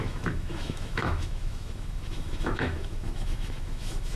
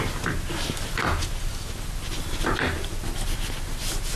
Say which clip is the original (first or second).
second